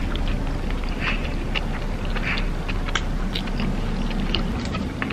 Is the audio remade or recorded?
recorded